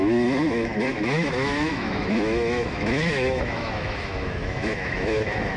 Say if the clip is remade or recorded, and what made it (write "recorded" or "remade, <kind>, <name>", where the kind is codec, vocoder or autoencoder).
remade, autoencoder, DAC-VAE